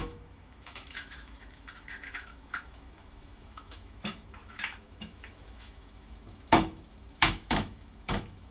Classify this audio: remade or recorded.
remade